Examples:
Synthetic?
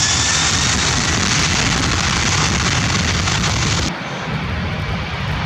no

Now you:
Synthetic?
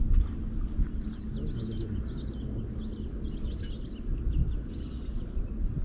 no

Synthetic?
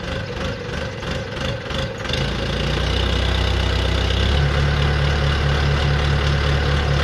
no